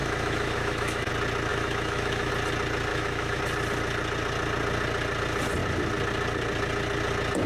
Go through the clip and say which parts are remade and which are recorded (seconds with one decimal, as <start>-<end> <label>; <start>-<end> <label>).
0.0-1.1 remade; 1.1-1.5 recorded; 1.5-2.3 remade; 2.3-2.9 recorded; 2.9-3.4 remade; 3.4-7.5 recorded